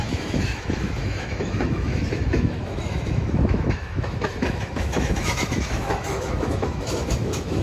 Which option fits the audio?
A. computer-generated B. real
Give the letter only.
A